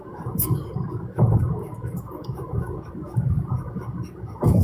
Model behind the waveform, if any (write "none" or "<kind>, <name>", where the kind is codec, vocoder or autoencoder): codec, DAC